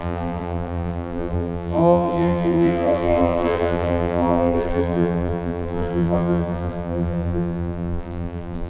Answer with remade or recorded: remade